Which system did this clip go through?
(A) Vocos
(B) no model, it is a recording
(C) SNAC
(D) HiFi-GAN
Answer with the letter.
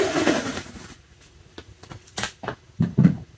A